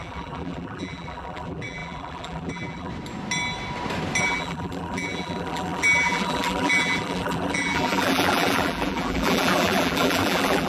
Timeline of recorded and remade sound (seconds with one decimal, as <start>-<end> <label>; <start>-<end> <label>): 0.0-2.9 remade; 2.9-4.2 recorded; 4.2-10.7 remade